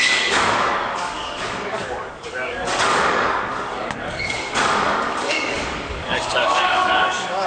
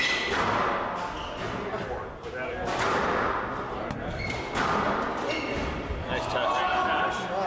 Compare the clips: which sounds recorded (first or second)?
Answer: second